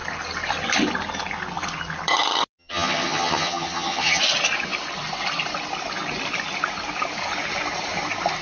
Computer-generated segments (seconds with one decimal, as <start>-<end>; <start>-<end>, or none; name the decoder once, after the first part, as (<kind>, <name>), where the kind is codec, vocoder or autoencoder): 2.6-4.2 (vocoder, HiFi-GAN)